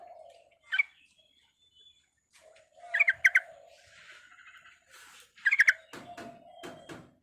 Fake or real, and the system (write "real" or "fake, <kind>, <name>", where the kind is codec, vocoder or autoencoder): real